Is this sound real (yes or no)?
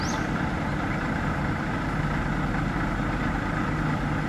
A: yes